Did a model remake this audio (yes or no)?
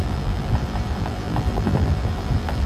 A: yes